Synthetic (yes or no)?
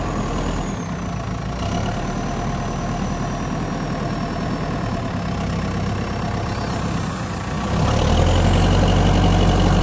no